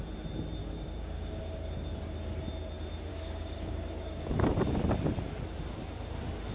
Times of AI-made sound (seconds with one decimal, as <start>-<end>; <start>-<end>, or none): 0.6-1.4; 3.1-4.3